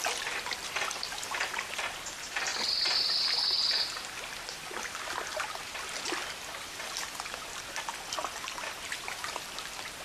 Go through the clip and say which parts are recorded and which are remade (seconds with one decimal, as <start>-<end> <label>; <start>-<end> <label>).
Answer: 0.0-10.0 recorded